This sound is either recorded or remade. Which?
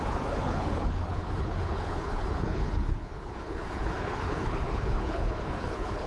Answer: remade